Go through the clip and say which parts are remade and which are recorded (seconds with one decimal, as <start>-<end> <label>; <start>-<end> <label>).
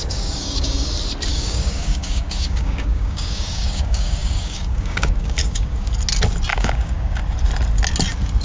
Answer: 0.0-0.9 remade; 0.9-1.3 recorded; 1.3-5.9 remade; 5.9-6.5 recorded; 6.5-7.2 remade; 7.2-8.4 recorded